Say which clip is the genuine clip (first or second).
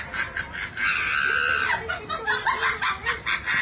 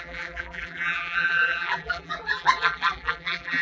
first